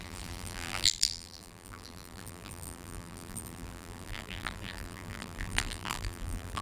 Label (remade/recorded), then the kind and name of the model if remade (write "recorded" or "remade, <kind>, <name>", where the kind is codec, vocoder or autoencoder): remade, vocoder, BigVGAN v2